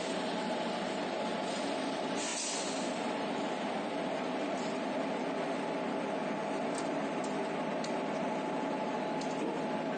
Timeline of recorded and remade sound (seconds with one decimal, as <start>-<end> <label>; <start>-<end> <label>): 0.0-10.0 recorded